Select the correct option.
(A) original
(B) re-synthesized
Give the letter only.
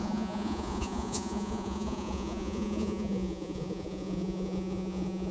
B